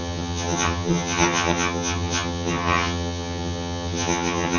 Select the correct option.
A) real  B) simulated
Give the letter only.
B